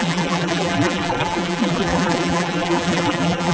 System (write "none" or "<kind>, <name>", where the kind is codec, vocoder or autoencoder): vocoder, BigVGAN v2